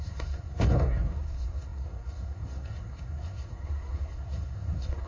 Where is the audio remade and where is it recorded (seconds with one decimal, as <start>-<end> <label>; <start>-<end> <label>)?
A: 0.0-5.1 remade